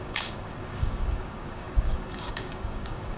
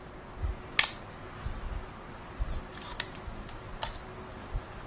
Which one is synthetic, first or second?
first